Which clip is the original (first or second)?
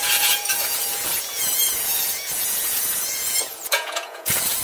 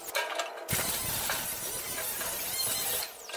second